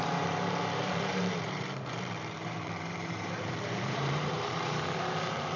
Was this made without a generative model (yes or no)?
no